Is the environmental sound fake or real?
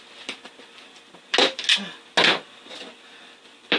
real